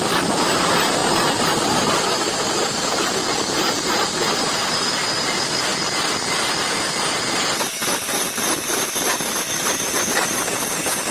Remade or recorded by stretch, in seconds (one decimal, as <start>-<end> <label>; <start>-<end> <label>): 0.0-1.0 remade; 1.0-1.5 recorded; 1.5-3.2 remade; 3.2-3.8 recorded; 3.8-5.7 remade; 5.7-6.7 recorded; 6.7-11.1 remade